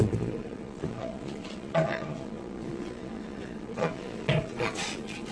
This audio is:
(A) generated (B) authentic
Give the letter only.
A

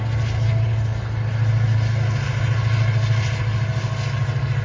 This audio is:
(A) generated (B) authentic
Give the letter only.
B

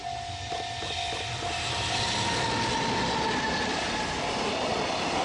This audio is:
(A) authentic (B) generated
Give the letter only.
A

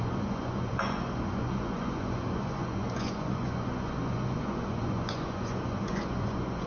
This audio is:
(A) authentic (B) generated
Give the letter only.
B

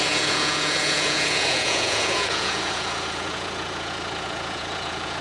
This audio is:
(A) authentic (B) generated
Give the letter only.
B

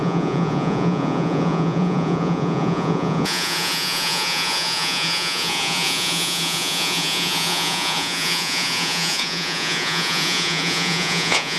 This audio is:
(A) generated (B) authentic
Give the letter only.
A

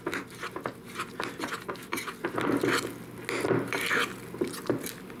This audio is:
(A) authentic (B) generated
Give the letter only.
A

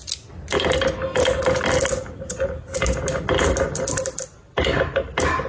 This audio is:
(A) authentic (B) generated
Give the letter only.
A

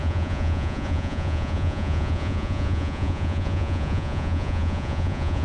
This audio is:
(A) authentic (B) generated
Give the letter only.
B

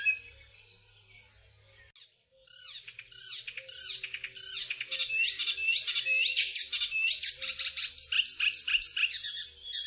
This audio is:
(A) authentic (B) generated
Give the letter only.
A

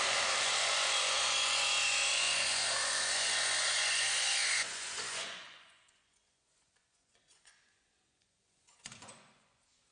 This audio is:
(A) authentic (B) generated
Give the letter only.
B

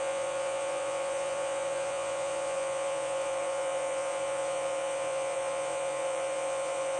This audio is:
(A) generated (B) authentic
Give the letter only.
A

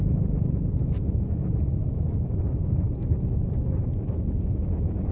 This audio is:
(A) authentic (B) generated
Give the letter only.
A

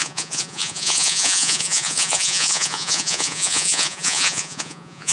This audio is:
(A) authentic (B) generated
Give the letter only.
B